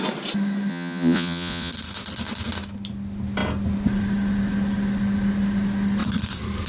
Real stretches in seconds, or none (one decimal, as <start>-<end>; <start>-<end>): 0.0-0.7; 1.7-6.7